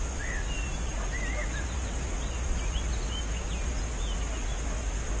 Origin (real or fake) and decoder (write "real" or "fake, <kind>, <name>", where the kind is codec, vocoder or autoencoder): real